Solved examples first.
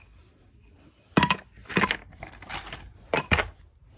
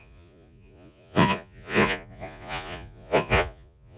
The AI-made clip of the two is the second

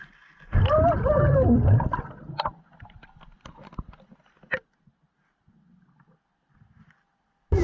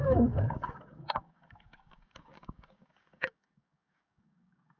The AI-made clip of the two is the second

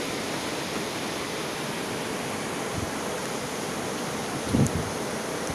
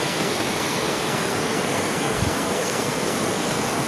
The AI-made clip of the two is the second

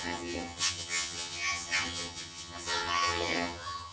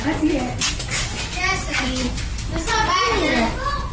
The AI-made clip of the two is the first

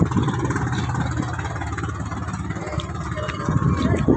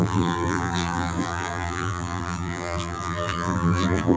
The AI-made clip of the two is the second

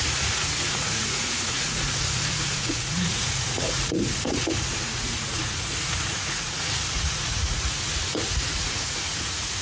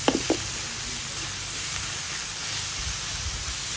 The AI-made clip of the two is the first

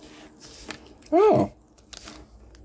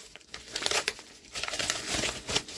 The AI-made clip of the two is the second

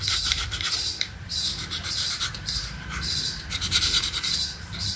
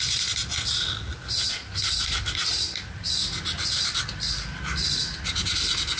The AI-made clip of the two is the first